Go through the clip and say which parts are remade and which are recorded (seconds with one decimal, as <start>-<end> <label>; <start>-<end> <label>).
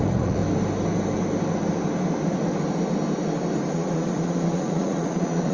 0.0-0.4 remade; 0.4-3.7 recorded; 3.7-5.5 remade